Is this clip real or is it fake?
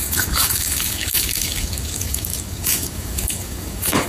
fake